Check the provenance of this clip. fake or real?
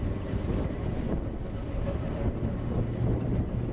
real